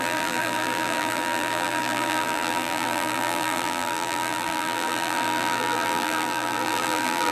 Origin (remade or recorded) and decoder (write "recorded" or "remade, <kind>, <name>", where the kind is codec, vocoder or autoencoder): remade, vocoder, BigVGAN v2